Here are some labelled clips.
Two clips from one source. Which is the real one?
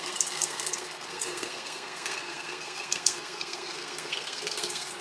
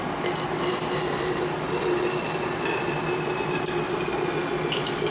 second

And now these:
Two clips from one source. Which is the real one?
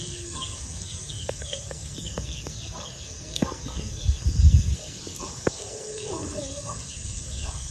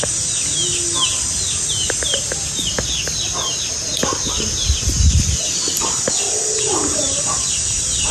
second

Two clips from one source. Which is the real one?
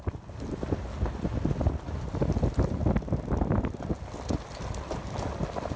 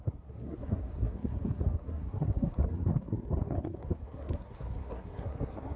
first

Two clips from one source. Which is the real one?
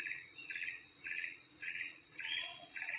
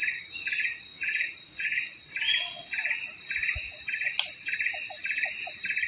second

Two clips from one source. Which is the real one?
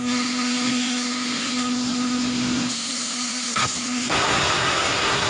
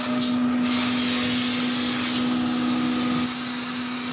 second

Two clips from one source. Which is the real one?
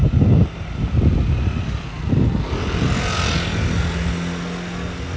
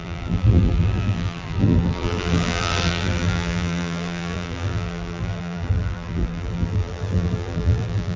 first